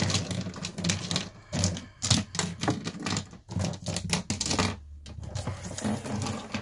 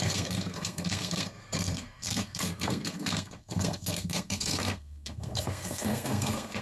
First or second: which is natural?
first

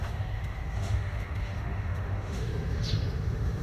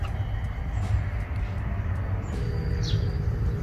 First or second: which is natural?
second